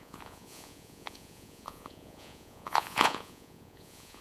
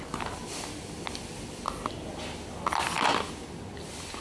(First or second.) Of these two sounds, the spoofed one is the first